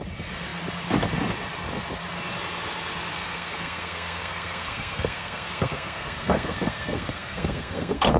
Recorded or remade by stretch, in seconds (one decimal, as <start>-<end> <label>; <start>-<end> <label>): 0.0-3.1 recorded; 3.1-8.2 remade